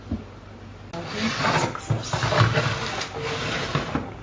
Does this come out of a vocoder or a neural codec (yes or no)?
no